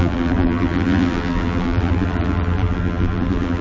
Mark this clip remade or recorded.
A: remade